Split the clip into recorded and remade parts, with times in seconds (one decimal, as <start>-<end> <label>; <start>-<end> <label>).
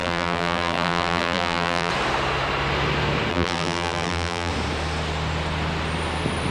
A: 0.0-1.9 remade; 1.9-3.3 recorded; 3.3-4.5 remade; 4.5-6.5 recorded